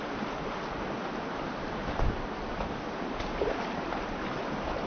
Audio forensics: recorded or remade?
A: recorded